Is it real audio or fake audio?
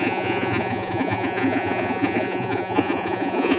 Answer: fake